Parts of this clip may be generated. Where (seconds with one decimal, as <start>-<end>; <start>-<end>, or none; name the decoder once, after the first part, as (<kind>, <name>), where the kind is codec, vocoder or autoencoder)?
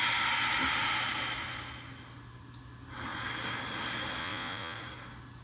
4.2-4.8 (vocoder, Vocos)